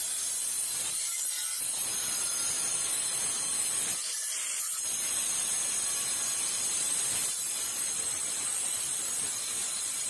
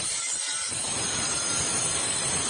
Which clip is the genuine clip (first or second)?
first